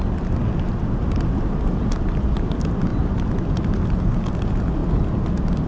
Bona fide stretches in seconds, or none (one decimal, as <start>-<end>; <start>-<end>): 0.0-5.7